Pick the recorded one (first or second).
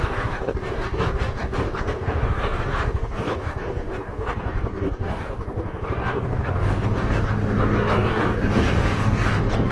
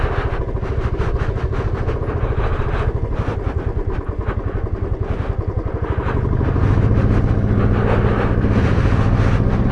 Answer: second